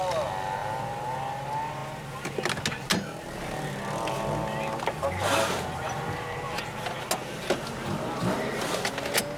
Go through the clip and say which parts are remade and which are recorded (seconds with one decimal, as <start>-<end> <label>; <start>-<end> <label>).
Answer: 0.0-9.4 recorded